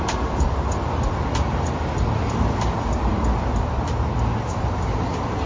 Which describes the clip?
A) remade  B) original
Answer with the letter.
A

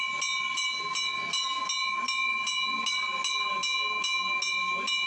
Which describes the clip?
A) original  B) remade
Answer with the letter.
A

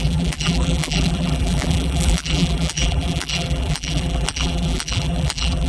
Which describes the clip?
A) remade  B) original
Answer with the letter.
A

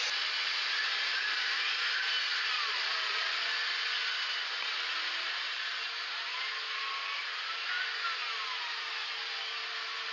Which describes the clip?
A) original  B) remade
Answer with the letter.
A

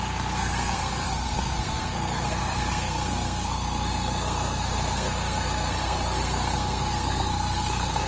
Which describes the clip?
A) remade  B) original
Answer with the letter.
A